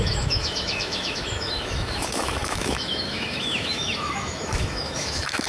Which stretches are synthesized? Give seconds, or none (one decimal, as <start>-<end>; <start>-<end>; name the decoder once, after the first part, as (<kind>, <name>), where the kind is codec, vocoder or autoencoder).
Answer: 0.0-5.5 (autoencoder, DAC-VAE)